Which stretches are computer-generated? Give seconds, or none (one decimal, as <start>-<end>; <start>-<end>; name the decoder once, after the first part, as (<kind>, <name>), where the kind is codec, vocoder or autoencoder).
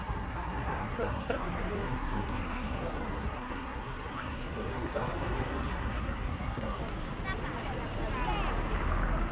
0.0-6.8 (codec, SNAC)